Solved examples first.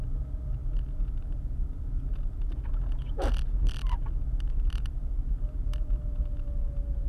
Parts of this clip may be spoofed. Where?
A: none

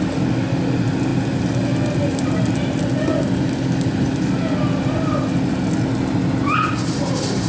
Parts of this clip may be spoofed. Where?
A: none

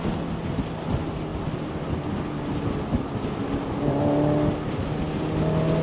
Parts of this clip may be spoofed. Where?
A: 1.3-4.0 (vocoder, BigVGAN v2)

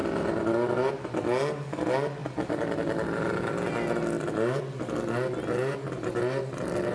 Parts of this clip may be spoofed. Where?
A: none

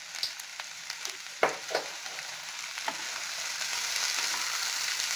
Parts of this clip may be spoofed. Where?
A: 0.5-2.6 (vocoder, BigVGAN v2)

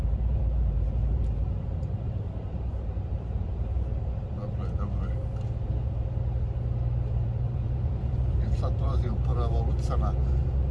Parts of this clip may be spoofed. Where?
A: 0.0-4.4 (vocoder, BigVGAN v2); 7.1-9.3

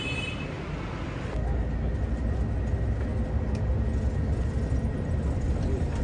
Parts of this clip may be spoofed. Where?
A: none